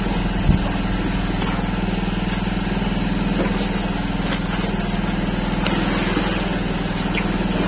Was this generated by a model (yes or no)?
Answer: no